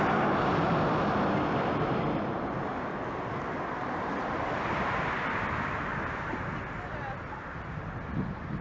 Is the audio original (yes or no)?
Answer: yes